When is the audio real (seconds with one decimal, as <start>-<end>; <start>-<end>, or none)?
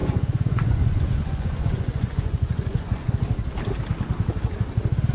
3.1-5.1